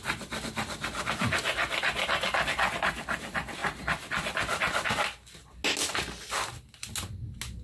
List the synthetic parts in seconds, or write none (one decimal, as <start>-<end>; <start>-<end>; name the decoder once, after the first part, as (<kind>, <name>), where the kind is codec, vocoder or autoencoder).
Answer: none